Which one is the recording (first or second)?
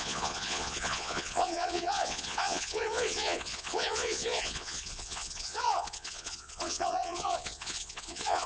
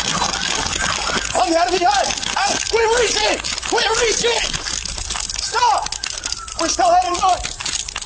second